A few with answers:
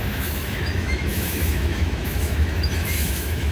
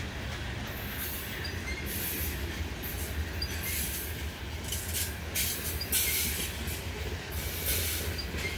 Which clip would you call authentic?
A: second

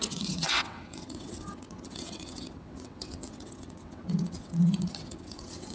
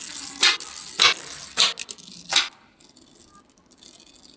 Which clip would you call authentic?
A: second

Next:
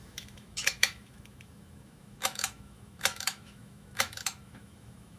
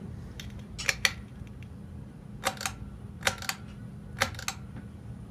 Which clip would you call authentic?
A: second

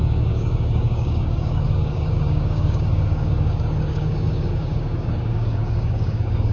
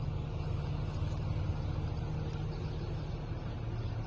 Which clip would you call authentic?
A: second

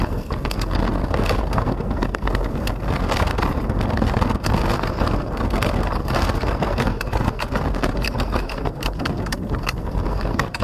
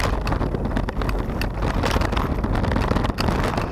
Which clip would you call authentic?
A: second